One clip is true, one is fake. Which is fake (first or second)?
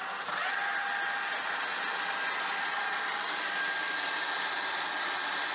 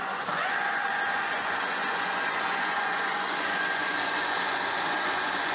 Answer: second